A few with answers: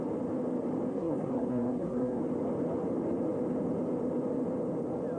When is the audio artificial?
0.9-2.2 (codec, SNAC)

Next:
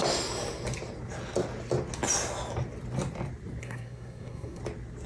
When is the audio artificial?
3.6-4.6 (codec, SNAC)

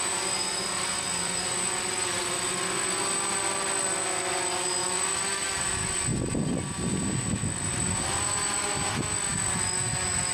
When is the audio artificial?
none

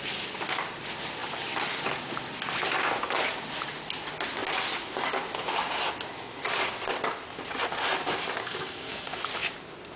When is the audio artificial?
8.4-9.2 (codec, SNAC)

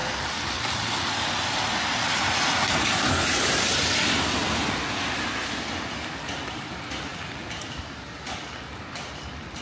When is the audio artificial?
none